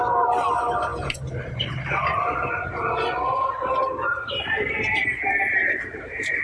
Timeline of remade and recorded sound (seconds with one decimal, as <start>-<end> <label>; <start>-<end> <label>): 0.0-6.4 remade